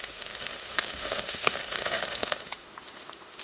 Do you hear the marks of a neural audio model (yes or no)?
yes